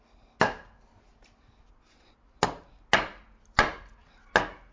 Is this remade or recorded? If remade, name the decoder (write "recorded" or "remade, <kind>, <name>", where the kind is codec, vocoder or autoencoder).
recorded